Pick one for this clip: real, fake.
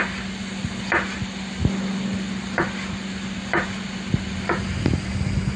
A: real